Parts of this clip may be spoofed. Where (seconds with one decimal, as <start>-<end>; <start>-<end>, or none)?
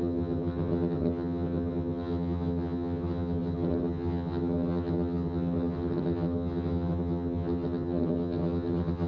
0.0-9.1